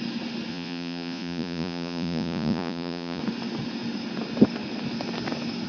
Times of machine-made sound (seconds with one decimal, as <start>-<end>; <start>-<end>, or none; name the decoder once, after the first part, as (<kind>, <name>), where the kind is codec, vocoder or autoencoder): 0.5-3.2 (vocoder, Vocos)